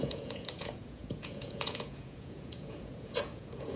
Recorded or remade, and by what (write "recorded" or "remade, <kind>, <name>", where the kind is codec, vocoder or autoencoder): remade, vocoder, Vocos